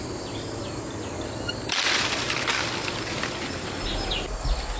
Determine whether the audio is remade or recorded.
recorded